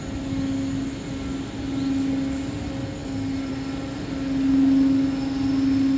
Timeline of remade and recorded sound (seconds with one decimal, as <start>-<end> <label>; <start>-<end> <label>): 0.0-6.0 recorded